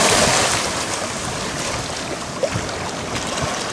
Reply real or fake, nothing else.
real